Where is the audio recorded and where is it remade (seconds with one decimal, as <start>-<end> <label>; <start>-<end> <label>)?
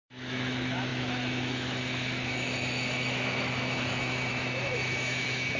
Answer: 0.0-5.6 remade